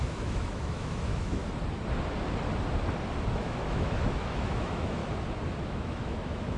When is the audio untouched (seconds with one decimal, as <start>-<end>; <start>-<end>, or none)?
1.4-3.3; 5.0-5.6